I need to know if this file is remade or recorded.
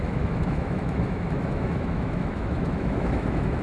remade